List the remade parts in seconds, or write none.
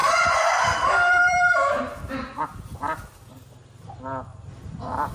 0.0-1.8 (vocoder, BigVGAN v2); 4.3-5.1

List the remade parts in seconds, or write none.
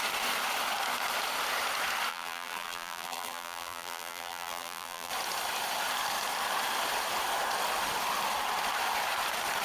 2.1-5.1 (vocoder, BigVGAN v2)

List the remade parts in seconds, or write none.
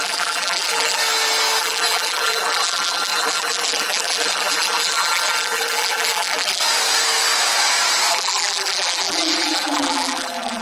0.0-1.0 (vocoder, BigVGAN v2); 1.6-6.6; 8.1-10.6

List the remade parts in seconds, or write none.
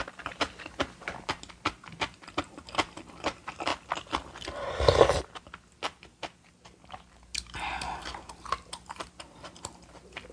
0.0-3.7 (vocoder, BigVGAN v2); 8.3-10.3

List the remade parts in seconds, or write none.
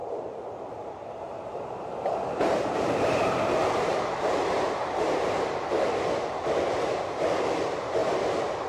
0.0-4.2 (vocoder, BigVGAN v2); 4.8-5.7